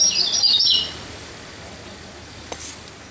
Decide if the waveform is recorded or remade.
recorded